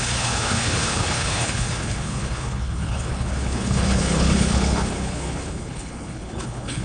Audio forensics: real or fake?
fake